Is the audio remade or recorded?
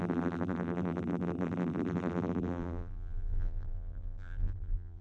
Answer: remade